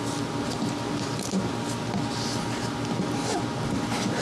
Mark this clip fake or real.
real